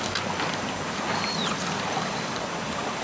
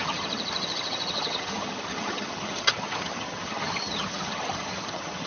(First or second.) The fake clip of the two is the second